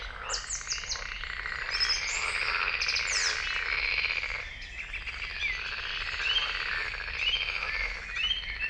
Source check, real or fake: real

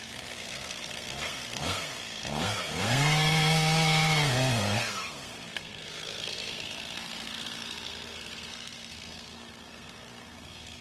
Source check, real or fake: fake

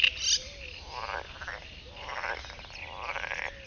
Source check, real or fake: real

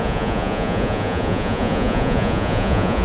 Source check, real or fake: fake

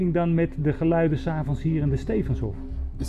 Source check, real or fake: real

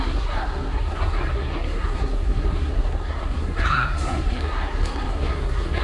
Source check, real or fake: fake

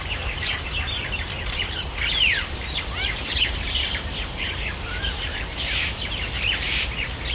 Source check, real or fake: fake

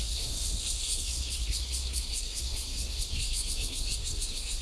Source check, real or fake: fake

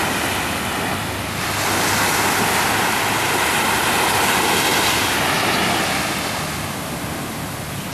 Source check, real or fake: real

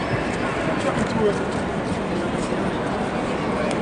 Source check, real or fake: real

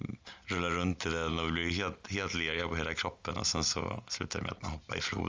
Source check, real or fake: real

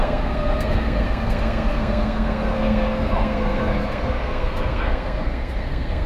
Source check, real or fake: fake